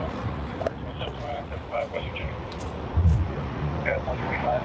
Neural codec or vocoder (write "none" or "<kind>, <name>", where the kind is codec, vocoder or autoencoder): vocoder, Vocos